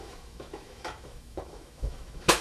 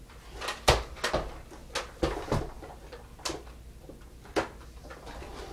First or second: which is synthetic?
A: first